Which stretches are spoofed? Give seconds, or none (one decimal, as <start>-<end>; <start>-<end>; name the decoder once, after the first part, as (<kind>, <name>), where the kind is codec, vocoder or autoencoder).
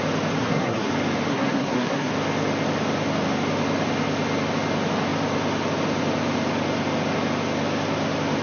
0.4-0.9 (codec, SNAC); 1.3-2.1